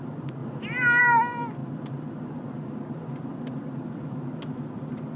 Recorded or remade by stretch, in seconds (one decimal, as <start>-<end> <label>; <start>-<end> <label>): 0.0-0.4 remade; 0.4-1.0 recorded; 1.0-1.6 remade; 1.6-3.9 recorded; 3.9-5.2 remade